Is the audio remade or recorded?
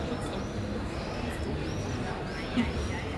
recorded